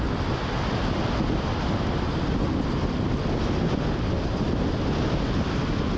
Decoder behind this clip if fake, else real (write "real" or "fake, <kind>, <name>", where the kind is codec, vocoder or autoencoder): real